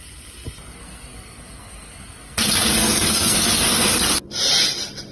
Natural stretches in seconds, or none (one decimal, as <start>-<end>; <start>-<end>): 0.0-0.8; 3.9-5.1